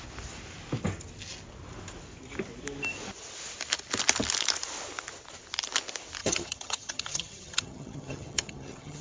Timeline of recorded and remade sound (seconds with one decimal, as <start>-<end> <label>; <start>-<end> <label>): 0.0-6.2 recorded; 6.2-9.0 remade